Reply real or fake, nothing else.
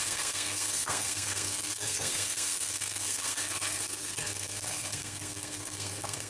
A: fake